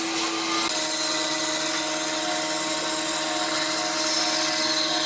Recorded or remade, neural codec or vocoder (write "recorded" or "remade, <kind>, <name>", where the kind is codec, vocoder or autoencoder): recorded